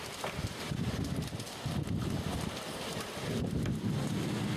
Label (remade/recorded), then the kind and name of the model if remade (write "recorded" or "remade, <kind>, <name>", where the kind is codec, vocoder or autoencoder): recorded